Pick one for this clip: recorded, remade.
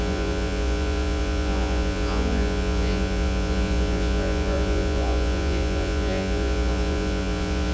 remade